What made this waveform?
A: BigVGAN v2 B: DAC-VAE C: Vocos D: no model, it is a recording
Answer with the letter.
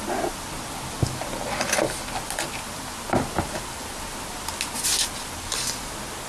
D